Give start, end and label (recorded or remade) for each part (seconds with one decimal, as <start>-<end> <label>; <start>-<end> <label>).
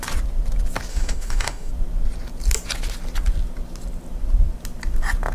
0.0-0.9 recorded; 0.9-1.7 remade; 1.7-5.3 recorded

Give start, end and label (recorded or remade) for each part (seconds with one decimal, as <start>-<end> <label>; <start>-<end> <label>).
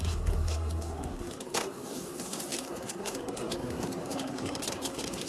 0.0-5.3 remade